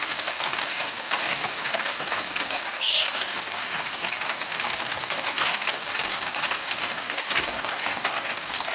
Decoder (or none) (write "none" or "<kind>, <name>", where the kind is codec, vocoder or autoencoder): codec, DAC